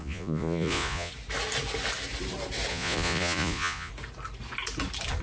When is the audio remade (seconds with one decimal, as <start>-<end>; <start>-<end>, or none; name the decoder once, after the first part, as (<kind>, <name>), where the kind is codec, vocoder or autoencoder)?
0.0-1.1 (vocoder, Vocos); 2.7-3.9